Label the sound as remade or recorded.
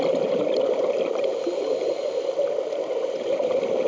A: recorded